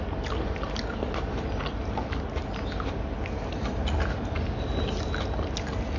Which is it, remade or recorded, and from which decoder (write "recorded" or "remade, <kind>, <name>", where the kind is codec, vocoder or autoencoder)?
recorded